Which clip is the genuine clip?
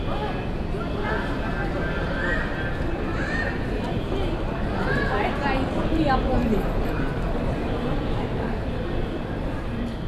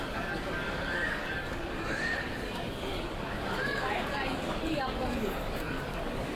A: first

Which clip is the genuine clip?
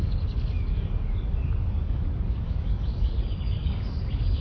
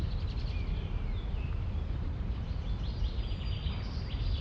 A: second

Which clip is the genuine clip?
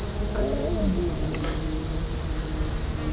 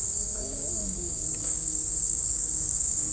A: first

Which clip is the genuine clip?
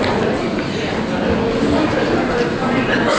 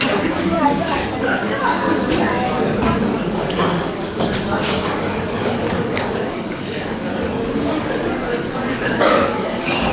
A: first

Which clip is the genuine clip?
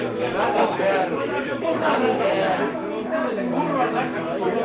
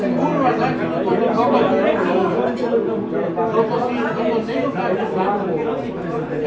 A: second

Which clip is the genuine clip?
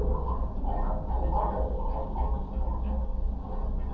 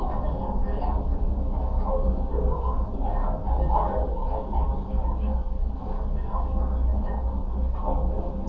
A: first